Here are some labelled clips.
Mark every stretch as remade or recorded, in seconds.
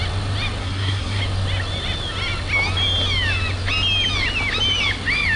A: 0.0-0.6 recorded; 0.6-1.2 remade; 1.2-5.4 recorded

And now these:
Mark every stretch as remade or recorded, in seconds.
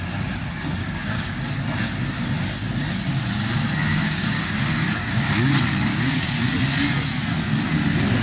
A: 0.0-0.8 recorded; 0.8-1.4 remade; 1.4-3.9 recorded; 3.9-5.2 remade; 5.2-8.2 recorded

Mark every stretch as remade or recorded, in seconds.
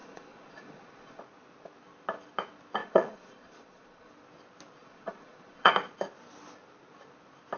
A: 0.0-1.2 remade; 1.2-2.8 recorded; 2.8-4.1 remade; 4.1-4.8 recorded; 4.8-5.7 remade; 5.7-7.6 recorded